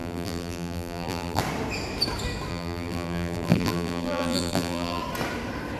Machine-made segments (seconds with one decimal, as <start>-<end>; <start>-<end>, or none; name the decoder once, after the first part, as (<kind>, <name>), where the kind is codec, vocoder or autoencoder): 0.0-1.4 (vocoder, BigVGAN v2); 2.5-5.0